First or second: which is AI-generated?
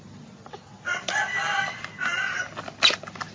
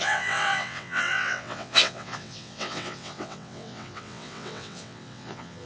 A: second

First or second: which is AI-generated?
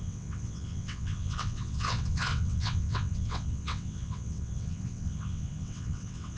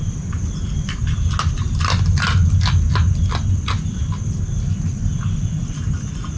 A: first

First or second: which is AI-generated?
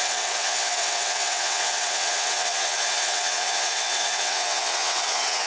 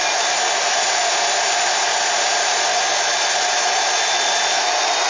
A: first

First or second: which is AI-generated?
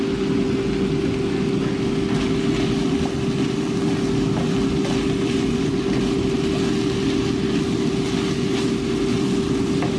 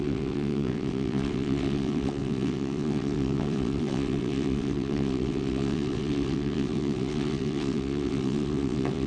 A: second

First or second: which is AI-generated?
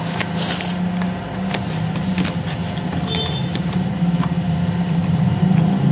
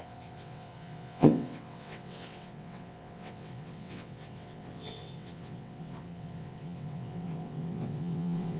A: second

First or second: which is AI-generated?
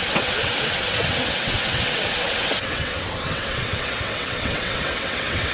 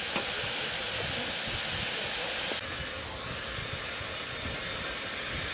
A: first